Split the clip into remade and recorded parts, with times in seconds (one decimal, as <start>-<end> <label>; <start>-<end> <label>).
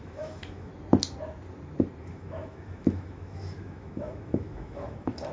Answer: 0.0-0.7 remade; 0.7-2.0 recorded; 2.0-5.3 remade